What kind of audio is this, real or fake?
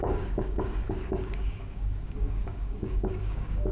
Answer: fake